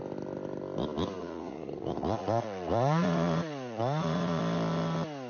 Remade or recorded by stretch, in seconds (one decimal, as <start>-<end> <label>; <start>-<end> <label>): 0.0-1.2 recorded; 1.2-4.4 remade; 4.4-5.3 recorded

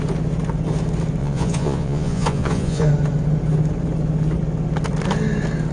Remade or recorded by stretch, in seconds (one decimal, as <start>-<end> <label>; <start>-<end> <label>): 0.0-1.2 recorded; 1.2-2.9 remade; 2.9-5.7 recorded